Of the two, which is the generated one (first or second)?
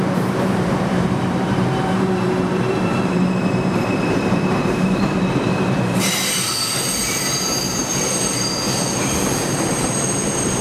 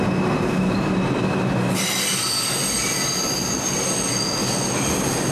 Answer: first